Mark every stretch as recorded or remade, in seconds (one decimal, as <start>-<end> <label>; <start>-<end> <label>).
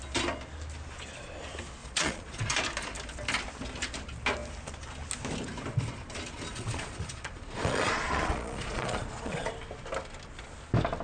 0.0-1.8 recorded; 1.8-2.5 remade; 2.5-6.5 recorded; 6.5-9.5 remade; 9.5-11.0 recorded